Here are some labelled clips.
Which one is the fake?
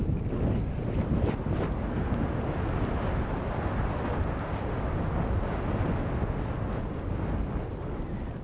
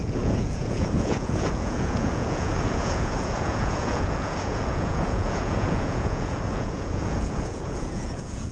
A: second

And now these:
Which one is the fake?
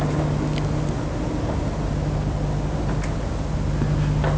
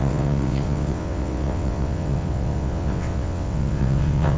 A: second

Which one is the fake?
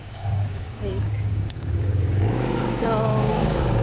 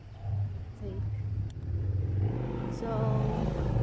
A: first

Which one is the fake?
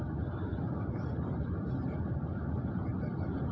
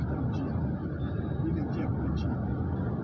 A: first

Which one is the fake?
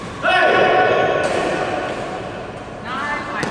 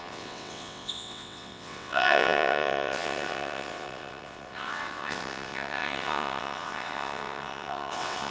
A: second